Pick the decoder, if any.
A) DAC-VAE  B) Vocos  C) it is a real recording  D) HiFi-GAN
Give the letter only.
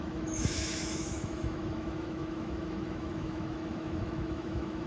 A